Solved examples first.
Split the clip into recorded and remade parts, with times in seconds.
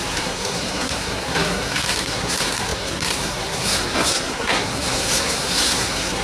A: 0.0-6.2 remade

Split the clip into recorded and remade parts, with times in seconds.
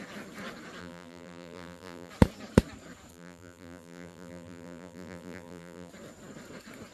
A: 0.0-0.8 recorded; 0.8-2.1 remade; 2.1-3.1 recorded; 3.1-5.9 remade; 5.9-6.9 recorded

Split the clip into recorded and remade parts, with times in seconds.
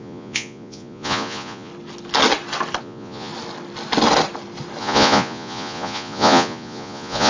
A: 0.0-1.7 remade; 1.7-2.8 recorded; 2.8-3.3 remade; 3.3-4.8 recorded; 4.8-7.3 remade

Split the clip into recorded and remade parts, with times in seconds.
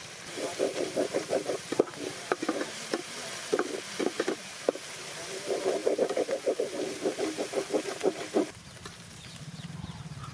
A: 0.0-3.2 remade; 3.2-4.0 recorded; 4.0-10.3 remade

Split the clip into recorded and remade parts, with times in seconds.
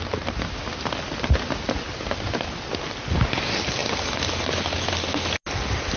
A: 0.0-6.0 recorded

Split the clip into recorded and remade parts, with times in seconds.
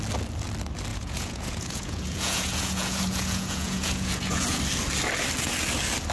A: 0.0-0.9 recorded; 0.9-4.6 remade; 4.6-6.1 recorded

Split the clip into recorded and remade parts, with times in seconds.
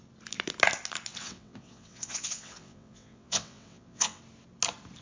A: 0.0-1.2 recorded; 1.2-4.2 remade; 4.2-5.0 recorded